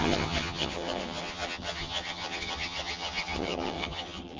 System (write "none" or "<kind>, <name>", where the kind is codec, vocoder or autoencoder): vocoder, HiFi-GAN